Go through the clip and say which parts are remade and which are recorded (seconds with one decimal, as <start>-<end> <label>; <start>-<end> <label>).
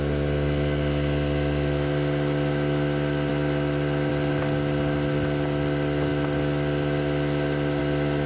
0.0-8.3 recorded